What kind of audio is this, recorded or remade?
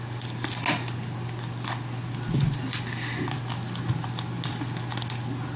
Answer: recorded